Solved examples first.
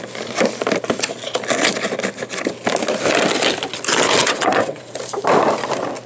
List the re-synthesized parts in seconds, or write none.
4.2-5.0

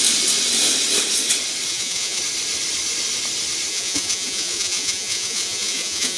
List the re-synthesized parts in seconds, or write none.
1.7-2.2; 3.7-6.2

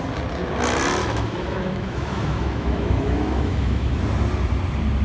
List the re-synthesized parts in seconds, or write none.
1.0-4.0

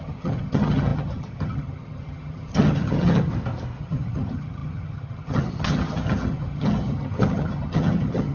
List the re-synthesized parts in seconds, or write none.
0.0-3.3; 3.8-8.3

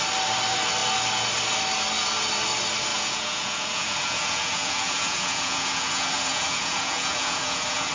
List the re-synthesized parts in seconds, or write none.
2.9-7.9

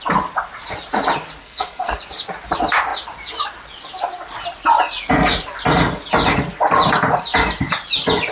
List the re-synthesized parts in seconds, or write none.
1.4-2.0

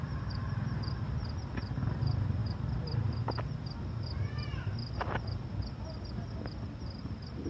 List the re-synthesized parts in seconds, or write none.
0.0-7.5